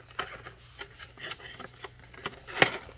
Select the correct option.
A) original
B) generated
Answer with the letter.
A